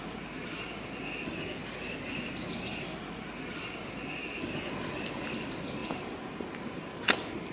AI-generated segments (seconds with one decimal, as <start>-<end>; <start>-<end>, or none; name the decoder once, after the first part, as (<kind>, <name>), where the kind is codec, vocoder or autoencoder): none